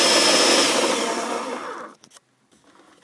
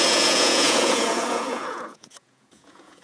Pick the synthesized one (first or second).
second